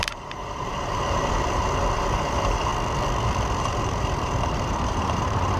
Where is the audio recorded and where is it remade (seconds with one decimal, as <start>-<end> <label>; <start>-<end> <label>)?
0.0-2.7 remade; 2.7-3.6 recorded; 3.6-5.6 remade